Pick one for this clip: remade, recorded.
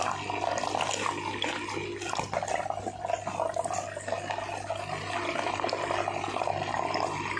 recorded